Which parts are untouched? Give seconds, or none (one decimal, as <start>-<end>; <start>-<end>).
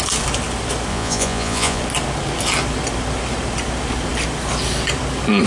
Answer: 0.0-0.9; 1.8-5.5